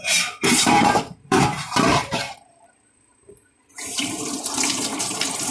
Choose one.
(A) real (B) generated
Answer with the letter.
B